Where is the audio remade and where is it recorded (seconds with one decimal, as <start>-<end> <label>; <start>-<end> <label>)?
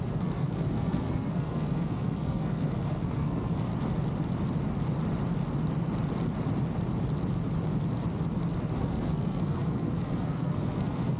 0.0-3.7 remade; 3.7-8.8 recorded; 8.8-11.2 remade